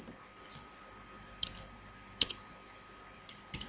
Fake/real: fake